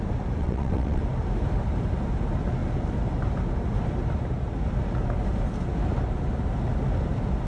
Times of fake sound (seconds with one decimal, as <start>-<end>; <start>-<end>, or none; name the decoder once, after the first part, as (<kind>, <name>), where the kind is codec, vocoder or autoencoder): 0.4-1.0 (vocoder, WaveNeXt)